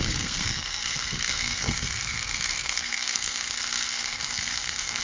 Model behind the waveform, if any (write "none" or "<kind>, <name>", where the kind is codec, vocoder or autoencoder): codec, SNAC